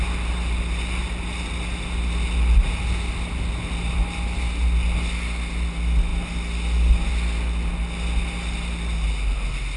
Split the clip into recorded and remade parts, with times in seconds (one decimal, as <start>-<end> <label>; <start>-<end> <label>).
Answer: 0.0-9.8 recorded